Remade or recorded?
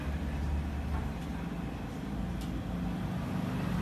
recorded